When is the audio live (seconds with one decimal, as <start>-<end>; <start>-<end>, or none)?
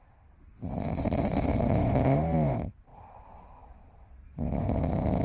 0.0-5.2